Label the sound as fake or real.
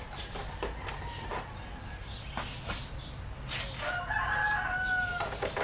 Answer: real